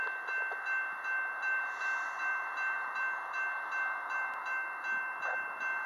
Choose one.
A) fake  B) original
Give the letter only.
B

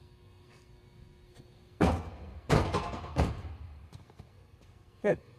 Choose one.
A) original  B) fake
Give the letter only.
B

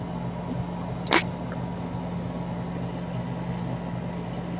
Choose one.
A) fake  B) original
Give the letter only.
B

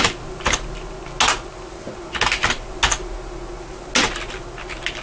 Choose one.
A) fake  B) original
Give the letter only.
B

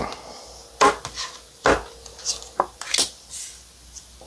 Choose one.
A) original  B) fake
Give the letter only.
A